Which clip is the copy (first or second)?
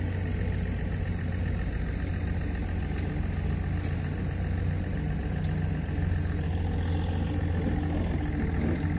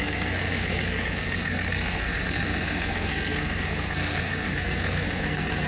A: second